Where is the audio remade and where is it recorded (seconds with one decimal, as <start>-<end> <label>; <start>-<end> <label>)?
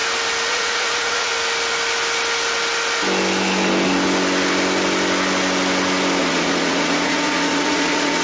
0.0-0.5 recorded; 0.5-1.3 remade; 1.3-6.2 recorded; 6.2-8.2 remade